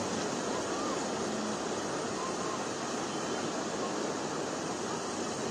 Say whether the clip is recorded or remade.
recorded